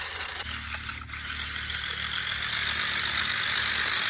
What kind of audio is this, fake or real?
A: real